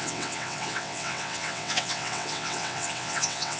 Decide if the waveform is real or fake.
fake